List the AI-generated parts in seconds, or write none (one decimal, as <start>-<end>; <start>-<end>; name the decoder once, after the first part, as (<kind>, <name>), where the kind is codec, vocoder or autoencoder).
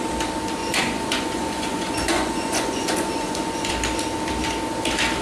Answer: 0.6-3.7 (vocoder, Vocos)